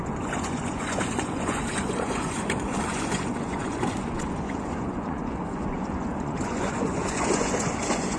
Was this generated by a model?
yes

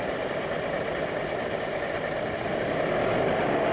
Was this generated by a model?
no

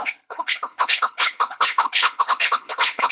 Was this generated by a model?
yes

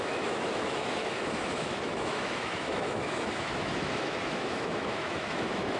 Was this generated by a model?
yes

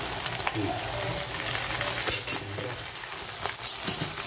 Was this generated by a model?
no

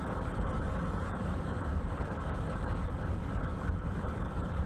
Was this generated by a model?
yes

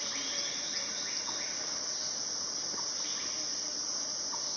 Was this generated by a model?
no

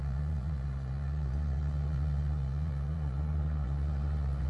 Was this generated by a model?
yes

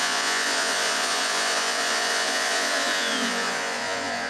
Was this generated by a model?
yes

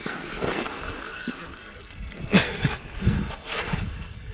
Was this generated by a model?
yes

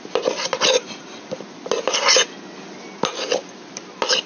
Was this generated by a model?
no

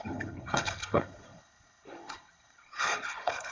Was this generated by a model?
yes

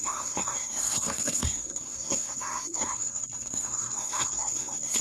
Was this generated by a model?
yes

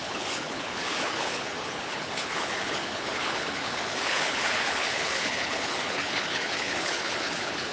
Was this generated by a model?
yes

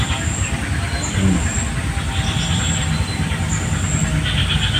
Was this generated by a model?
no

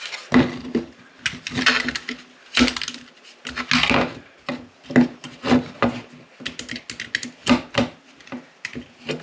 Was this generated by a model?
no